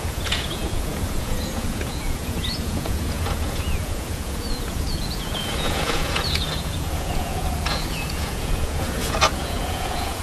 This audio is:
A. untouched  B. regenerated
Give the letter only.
B